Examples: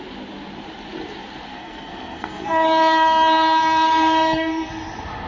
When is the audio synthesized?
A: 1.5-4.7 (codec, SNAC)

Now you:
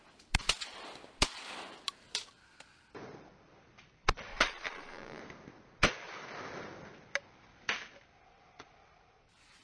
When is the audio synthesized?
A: 4.3-5.2 (vocoder, Vocos)

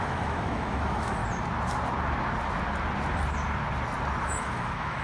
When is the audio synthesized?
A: 0.0-1.2 (autoencoder, DAC-VAE); 4.2-5.0

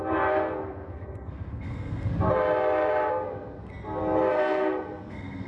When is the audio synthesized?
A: 0.0-2.1 (codec, SNAC); 3.1-3.7; 4.3-5.5

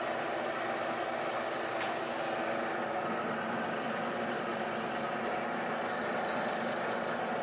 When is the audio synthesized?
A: none

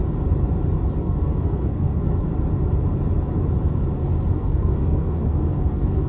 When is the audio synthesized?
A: 1.0-2.3 (codec, SNAC); 4.3-6.1